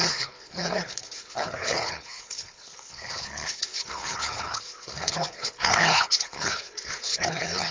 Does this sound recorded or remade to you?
remade